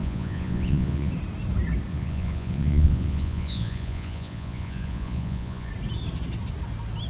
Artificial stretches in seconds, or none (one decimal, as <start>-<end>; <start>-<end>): 0.0-1.1; 1.9-5.7